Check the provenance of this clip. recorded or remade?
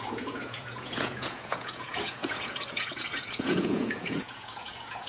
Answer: remade